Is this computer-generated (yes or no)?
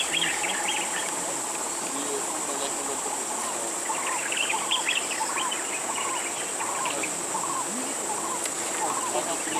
no